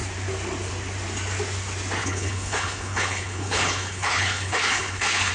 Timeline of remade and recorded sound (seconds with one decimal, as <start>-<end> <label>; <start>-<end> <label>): 0.0-2.0 recorded; 2.0-5.3 remade